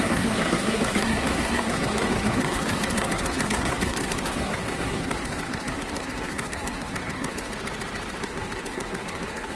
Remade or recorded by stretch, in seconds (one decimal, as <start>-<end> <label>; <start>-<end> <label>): 0.0-7.5 remade; 7.5-8.2 recorded; 8.2-9.6 remade